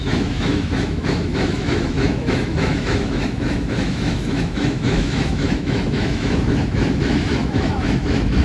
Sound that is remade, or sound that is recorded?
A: remade